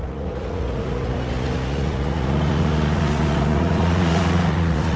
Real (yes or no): no